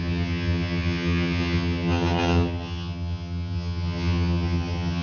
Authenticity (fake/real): fake